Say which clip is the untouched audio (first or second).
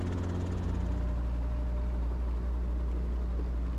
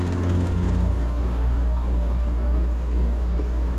first